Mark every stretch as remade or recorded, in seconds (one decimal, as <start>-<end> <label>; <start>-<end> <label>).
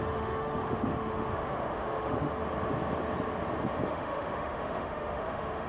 0.0-2.3 remade; 2.3-3.9 recorded; 3.9-5.7 remade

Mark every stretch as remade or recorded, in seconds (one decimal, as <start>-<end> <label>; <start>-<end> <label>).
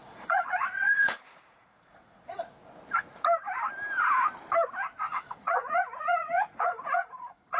0.0-2.6 remade; 2.6-5.1 recorded; 5.1-7.6 remade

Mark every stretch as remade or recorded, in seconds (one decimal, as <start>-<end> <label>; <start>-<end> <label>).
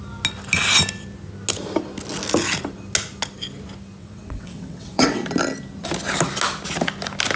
0.0-4.0 recorded; 4.0-5.2 remade; 5.2-7.4 recorded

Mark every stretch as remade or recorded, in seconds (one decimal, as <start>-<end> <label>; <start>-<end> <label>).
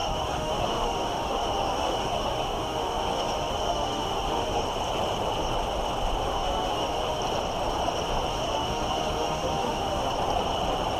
0.0-4.6 remade; 4.6-6.2 recorded; 6.2-7.2 remade; 7.2-8.3 recorded; 8.3-10.1 remade; 10.1-11.0 recorded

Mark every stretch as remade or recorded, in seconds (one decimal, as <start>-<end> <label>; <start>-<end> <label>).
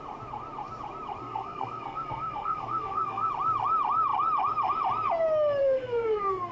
0.0-1.2 recorded; 1.2-3.3 remade; 3.3-5.6 recorded; 5.6-6.5 remade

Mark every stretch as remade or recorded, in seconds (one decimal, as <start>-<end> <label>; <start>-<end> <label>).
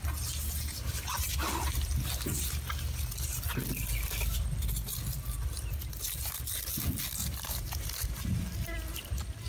0.0-7.2 recorded; 7.2-8.4 remade; 8.4-9.5 recorded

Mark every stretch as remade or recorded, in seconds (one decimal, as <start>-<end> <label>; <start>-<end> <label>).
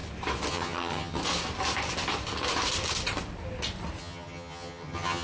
0.0-0.5 recorded; 0.5-1.2 remade; 1.2-4.0 recorded; 4.0-5.2 remade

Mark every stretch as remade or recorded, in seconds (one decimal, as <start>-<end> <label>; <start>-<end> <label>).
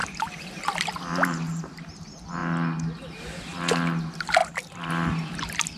0.0-0.6 remade; 0.6-5.8 recorded